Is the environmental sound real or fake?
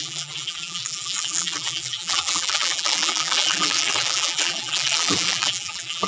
fake